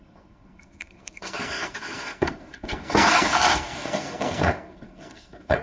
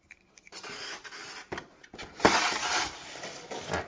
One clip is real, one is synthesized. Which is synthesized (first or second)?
first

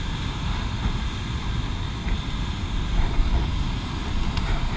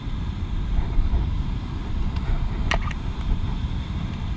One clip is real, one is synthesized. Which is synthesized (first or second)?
second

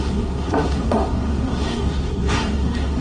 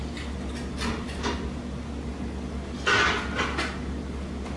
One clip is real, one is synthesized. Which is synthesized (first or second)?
first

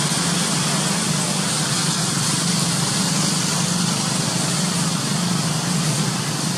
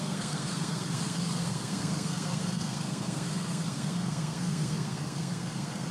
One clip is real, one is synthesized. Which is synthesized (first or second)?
second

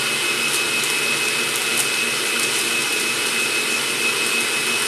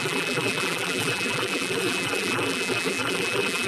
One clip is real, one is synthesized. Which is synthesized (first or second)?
second